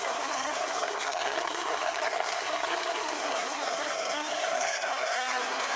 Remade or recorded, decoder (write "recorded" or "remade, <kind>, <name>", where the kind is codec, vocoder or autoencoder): remade, codec, SNAC